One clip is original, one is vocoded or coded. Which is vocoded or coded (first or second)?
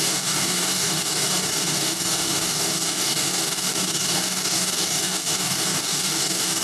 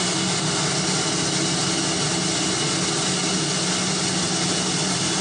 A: first